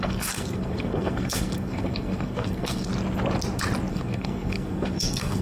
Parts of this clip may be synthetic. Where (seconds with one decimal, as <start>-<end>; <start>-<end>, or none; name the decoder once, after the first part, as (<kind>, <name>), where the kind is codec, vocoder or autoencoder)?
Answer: 0.0-2.9 (codec, SNAC); 3.9-5.4